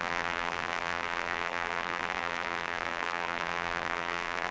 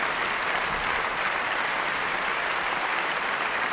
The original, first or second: second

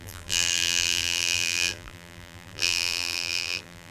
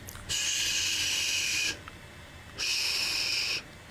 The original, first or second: second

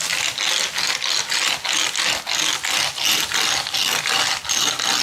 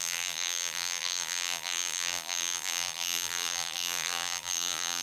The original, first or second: first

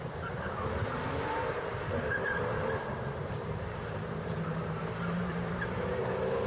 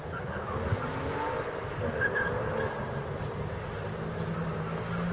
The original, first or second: second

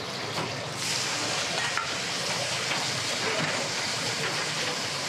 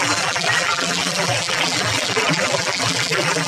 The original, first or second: first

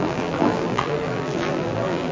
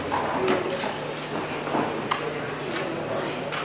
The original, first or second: second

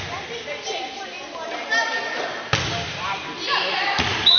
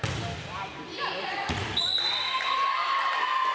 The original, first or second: first